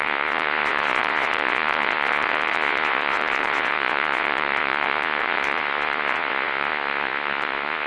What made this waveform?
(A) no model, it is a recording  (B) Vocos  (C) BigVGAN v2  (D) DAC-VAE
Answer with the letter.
B